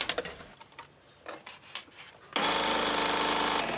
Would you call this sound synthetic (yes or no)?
no